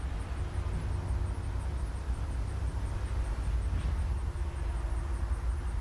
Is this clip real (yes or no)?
yes